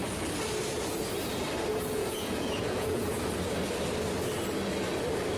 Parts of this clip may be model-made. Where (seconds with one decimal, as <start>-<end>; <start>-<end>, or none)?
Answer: 2.0-3.3

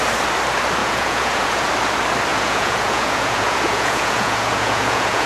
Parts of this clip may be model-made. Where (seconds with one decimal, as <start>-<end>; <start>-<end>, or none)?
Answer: 0.8-1.7; 2.3-5.3

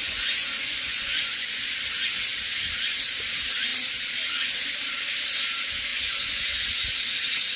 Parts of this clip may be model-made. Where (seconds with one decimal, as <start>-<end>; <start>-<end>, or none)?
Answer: 0.0-1.7; 5.9-7.0

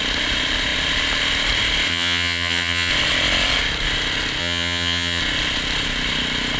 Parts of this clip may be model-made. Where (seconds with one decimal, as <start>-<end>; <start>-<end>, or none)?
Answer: 1.9-2.9; 4.4-5.2

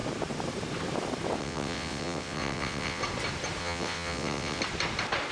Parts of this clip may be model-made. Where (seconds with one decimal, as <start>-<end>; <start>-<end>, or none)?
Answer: 1.4-3.0; 3.6-4.6

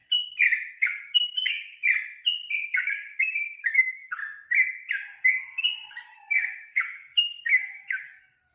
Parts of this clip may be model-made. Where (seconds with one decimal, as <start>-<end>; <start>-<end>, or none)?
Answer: 0.7-1.8; 2.6-4.2; 5.9-8.5